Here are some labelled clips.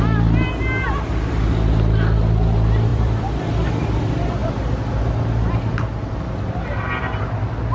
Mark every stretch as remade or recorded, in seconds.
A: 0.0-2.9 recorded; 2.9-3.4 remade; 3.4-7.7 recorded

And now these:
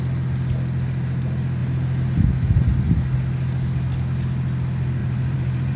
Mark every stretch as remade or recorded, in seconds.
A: 0.0-5.0 recorded; 5.0-5.8 remade

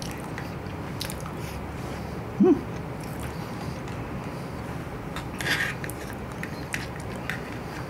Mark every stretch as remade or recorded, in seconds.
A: 0.0-7.9 recorded